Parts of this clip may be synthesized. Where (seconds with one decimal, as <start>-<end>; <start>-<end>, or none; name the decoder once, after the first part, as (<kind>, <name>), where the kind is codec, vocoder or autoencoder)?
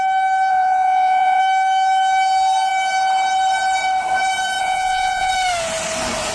0.5-1.4 (vocoder, Vocos); 4.6-5.3